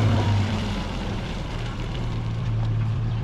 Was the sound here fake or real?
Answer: fake